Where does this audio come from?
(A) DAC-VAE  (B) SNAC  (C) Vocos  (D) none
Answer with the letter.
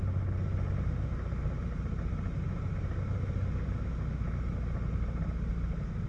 D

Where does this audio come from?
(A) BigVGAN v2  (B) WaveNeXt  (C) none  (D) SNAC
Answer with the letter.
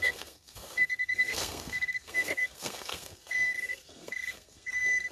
D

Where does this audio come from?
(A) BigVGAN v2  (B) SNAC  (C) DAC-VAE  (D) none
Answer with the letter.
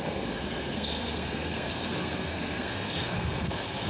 B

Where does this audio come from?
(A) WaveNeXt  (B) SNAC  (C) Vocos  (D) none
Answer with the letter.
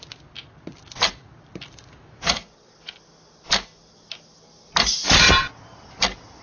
D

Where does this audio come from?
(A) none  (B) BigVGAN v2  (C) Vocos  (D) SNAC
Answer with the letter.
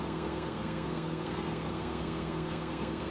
D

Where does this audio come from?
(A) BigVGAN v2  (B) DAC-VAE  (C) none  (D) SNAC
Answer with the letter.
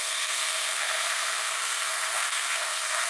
D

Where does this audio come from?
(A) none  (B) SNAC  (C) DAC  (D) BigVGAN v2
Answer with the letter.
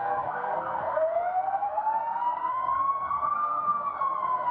B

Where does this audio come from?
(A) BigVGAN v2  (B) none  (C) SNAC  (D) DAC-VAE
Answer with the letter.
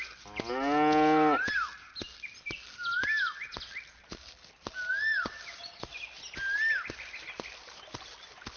B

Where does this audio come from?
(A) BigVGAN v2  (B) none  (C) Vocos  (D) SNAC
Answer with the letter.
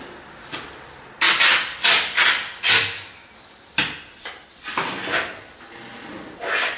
B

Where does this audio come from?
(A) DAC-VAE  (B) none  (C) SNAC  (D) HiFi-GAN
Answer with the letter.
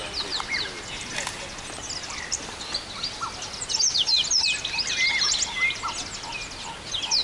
B